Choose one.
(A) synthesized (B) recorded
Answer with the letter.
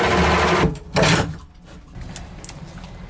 B